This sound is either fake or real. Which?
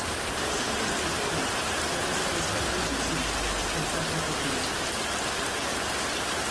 real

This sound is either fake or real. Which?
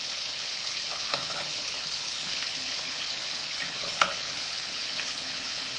fake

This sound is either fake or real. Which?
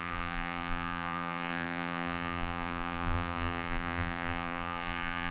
fake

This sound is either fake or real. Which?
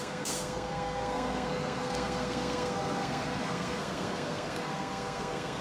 fake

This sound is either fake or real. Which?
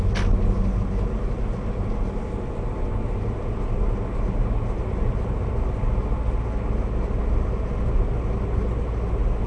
real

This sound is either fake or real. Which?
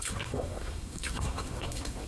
fake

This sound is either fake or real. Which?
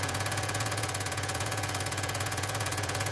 fake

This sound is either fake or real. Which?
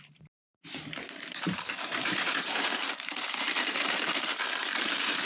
fake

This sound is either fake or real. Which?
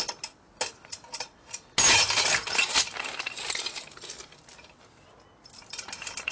real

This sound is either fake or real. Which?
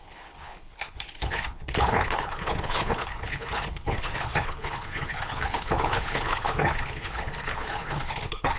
fake